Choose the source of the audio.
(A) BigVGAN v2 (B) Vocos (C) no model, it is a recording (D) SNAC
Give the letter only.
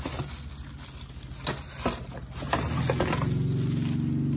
C